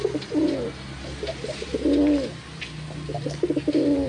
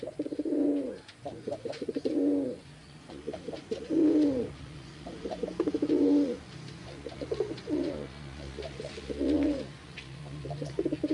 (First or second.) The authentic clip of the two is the first